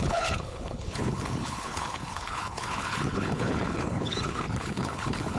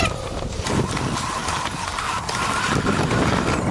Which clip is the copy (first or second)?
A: first